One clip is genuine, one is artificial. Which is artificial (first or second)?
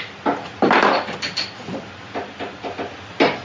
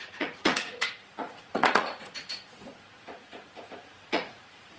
second